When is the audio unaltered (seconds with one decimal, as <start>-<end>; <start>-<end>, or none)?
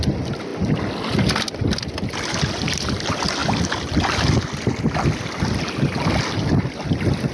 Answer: 0.0-7.3